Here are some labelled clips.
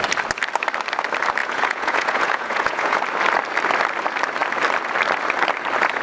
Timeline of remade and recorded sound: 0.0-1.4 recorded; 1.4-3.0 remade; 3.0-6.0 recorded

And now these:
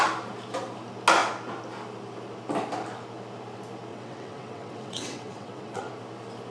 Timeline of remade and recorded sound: 0.0-3.9 recorded; 3.9-5.9 remade; 5.9-6.5 recorded